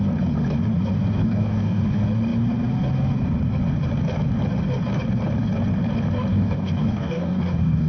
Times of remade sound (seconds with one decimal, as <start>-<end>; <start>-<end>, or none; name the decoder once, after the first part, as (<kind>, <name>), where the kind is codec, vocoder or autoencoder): 1.2-1.8 (codec, DAC); 6.3-7.9

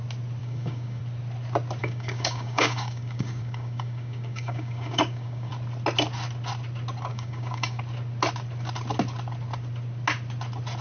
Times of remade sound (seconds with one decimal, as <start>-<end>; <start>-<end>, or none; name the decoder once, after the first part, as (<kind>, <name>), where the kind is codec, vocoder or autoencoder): 0.4-1.0 (codec, DAC); 1.8-5.5; 7.1-7.8

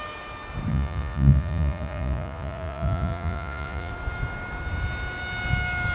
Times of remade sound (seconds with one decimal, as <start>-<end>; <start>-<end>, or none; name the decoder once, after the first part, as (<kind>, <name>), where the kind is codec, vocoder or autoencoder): 0.7-3.9 (vocoder, Vocos)

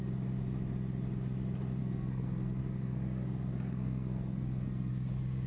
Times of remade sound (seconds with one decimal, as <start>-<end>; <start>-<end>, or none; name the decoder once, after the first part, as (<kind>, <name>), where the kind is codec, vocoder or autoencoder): 1.8-4.9 (codec, SNAC)

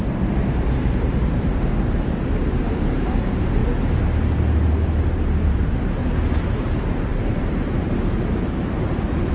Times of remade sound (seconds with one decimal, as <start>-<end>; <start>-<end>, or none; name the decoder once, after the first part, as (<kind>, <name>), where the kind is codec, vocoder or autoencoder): 0.0-3.6 (vocoder, BigVGAN v2); 5.4-6.0; 6.6-9.3

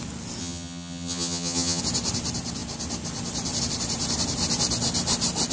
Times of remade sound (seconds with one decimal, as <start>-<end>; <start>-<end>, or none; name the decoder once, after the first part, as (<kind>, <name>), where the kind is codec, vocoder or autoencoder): 0.4-1.8 (vocoder, HiFi-GAN)

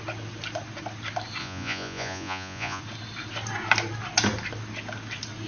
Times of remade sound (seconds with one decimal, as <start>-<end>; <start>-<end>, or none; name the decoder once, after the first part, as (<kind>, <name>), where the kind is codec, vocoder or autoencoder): 1.4-2.8 (vocoder, Vocos)